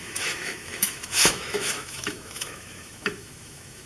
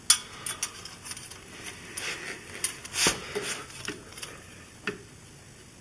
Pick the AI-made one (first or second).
first